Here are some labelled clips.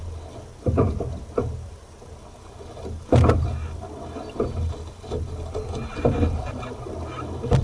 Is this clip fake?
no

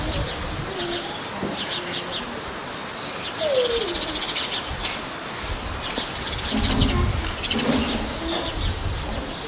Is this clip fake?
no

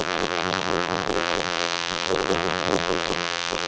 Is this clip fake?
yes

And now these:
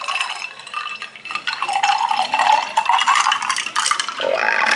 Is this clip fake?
yes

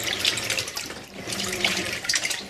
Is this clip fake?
yes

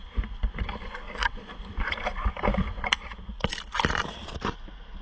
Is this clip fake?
yes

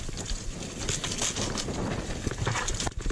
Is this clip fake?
no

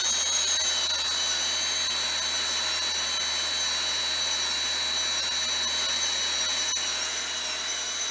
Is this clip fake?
no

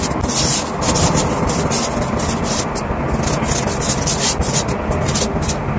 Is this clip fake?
no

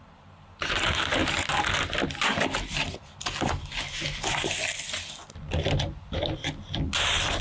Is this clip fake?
no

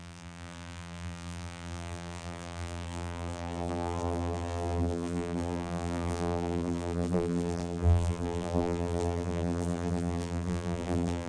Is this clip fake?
yes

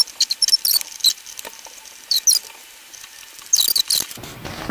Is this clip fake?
no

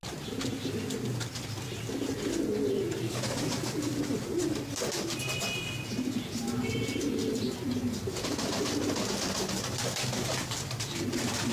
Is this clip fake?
no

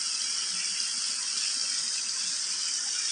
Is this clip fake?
no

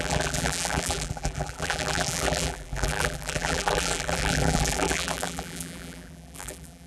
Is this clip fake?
yes